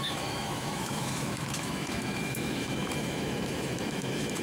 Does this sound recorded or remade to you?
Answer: remade